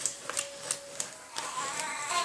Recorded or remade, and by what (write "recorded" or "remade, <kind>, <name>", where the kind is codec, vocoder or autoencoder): recorded